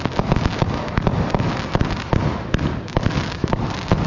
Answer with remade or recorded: recorded